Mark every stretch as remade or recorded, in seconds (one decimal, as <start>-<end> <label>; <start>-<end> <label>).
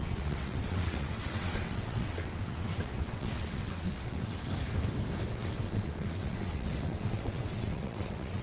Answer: 0.0-4.5 remade; 4.5-5.3 recorded; 5.3-8.4 remade